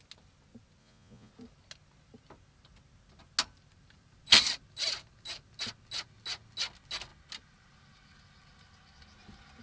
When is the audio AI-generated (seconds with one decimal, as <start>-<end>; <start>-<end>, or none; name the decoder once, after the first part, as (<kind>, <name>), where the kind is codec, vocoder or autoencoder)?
0.8-1.3 (vocoder, Vocos)